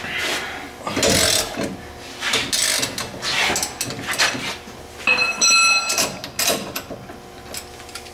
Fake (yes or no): no